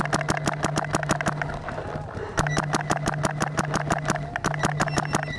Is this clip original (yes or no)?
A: yes